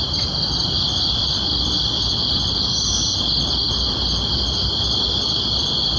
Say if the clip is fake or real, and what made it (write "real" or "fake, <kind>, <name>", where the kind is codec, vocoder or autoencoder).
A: real